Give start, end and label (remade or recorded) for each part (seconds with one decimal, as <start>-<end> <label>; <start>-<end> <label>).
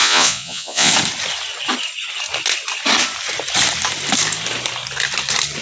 0.0-0.9 remade; 0.9-5.6 recorded